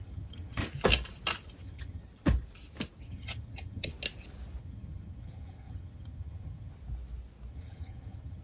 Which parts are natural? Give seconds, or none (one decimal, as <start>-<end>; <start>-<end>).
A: 0.6-1.6; 2.0-3.0; 3.9-4.6; 6.7-7.5